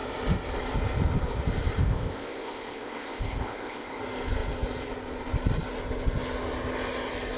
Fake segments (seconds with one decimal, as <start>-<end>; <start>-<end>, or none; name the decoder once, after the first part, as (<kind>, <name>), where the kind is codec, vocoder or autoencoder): 1.8-4.0 (codec, ZipCodec)